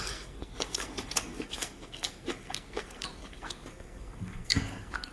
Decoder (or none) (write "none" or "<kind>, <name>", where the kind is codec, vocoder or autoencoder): codec, SNAC